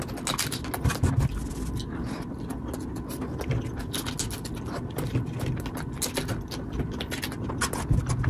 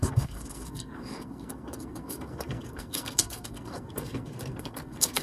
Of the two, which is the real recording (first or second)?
first